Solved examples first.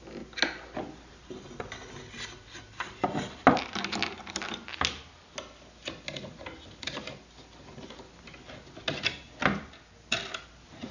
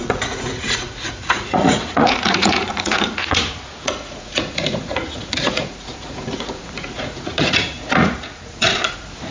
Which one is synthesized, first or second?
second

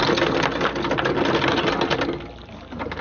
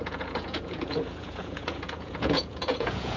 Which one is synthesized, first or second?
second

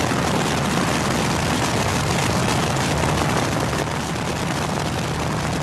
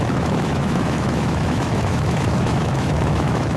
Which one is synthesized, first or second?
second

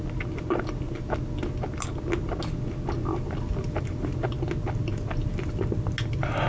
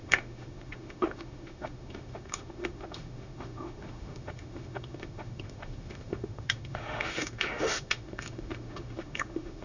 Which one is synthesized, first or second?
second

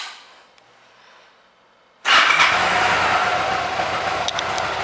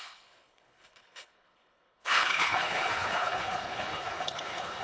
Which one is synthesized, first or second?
second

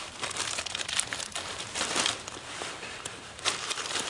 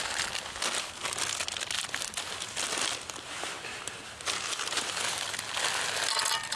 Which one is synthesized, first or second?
first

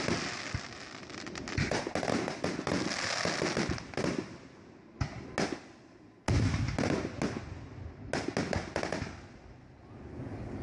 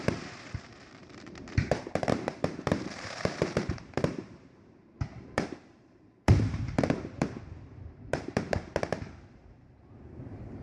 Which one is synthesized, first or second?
second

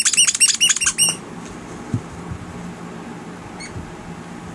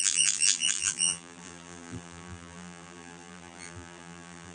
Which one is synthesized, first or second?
second